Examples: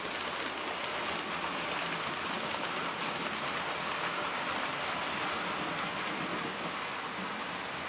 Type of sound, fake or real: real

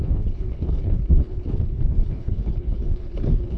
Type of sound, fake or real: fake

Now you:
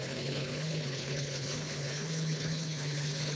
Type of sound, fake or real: fake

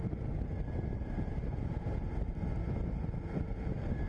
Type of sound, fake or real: real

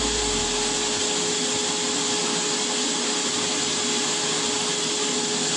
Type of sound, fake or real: real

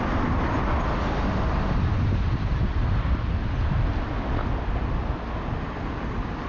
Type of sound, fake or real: real